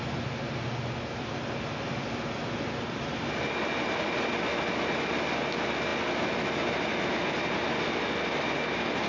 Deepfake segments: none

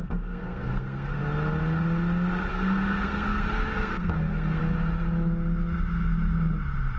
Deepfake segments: 0.0-1.2 (codec, SNAC); 2.5-4.6

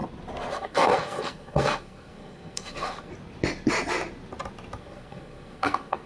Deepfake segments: 0.5-3.1 (codec, SNAC); 4.8-6.1

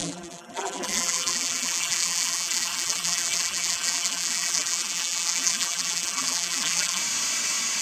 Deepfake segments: 0.0-7.0 (vocoder, BigVGAN v2)